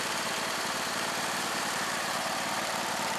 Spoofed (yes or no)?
yes